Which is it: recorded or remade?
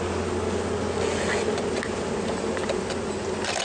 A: recorded